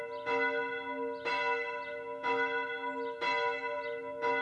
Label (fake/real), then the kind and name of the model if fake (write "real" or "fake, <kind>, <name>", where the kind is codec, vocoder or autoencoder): real